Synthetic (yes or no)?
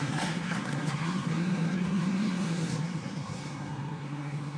yes